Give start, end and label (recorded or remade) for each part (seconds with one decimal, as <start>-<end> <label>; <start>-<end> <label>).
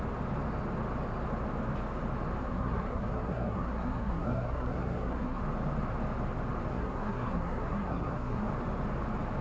0.0-2.4 recorded; 2.4-5.4 remade; 5.4-6.7 recorded; 6.7-8.5 remade; 8.5-9.4 recorded